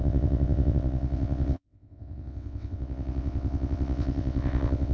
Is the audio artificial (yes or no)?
yes